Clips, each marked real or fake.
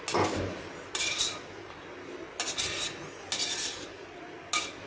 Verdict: real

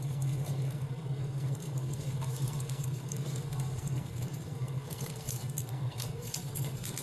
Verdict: fake